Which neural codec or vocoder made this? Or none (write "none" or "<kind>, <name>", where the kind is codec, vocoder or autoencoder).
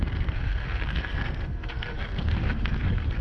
codec, SNAC